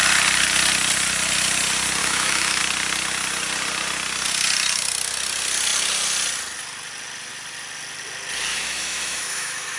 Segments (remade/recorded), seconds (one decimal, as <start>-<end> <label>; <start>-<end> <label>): 0.0-2.0 recorded; 2.0-2.6 remade; 2.6-8.5 recorded; 8.5-9.8 remade